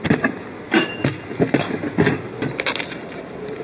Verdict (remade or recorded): recorded